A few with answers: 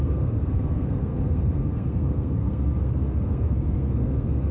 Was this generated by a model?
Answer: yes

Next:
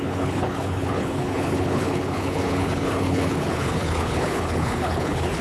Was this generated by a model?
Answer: yes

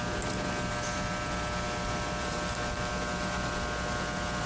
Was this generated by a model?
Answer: no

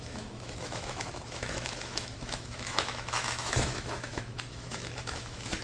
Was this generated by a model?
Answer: yes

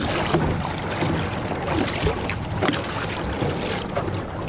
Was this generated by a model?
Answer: no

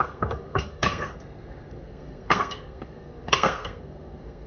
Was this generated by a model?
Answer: yes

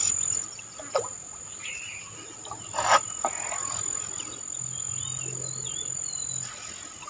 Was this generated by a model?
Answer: no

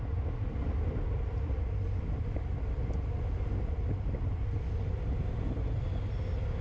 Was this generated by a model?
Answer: no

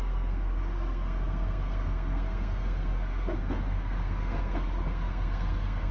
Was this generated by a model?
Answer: yes